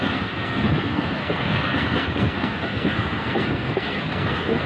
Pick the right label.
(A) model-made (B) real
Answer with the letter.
A